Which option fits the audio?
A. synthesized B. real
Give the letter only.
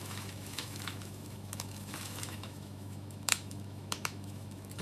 A